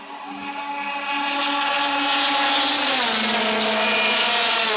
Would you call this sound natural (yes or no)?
yes